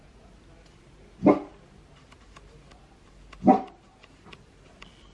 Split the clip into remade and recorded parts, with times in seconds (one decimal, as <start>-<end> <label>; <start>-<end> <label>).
0.0-5.1 recorded